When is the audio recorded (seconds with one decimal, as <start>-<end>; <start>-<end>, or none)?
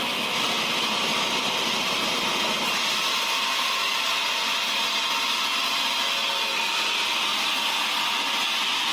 0.0-1.1; 2.2-3.1; 5.1-6.5; 7.1-8.9